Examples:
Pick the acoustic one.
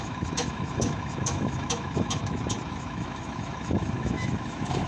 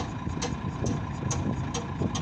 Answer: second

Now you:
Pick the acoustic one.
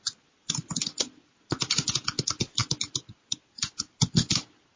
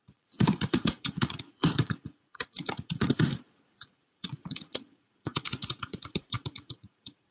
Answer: first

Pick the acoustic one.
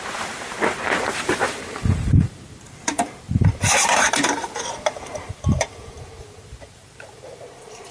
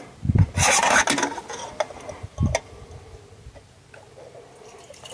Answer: second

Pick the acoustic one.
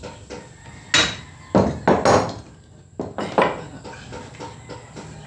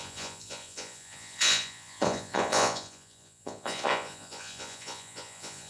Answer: first